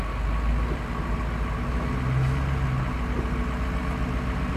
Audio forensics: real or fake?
real